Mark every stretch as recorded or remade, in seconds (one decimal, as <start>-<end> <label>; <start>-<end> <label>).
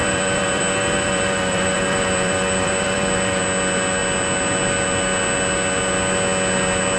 0.0-3.4 remade; 3.4-7.0 recorded